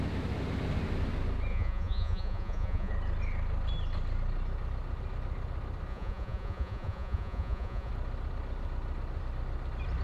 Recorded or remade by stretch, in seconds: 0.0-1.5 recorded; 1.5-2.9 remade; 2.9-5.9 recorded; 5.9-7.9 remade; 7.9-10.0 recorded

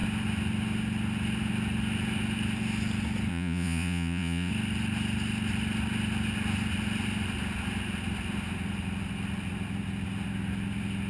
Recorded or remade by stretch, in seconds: 0.0-3.3 recorded; 3.3-4.5 remade; 4.5-11.1 recorded

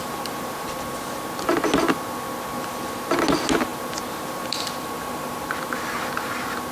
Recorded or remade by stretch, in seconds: 0.0-6.7 recorded

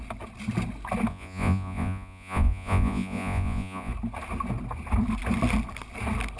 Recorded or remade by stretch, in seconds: 0.0-1.1 recorded; 1.1-3.9 remade; 3.9-6.4 recorded

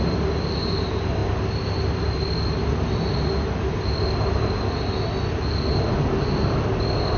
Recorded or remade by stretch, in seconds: 0.0-7.2 recorded

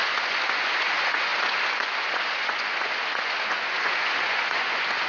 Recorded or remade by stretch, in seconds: 0.0-5.1 remade

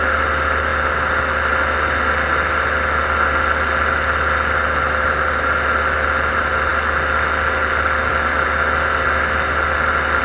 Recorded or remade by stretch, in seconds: 0.0-10.2 recorded

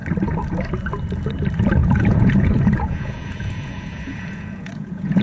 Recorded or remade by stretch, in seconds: 0.0-1.8 recorded; 1.8-5.2 remade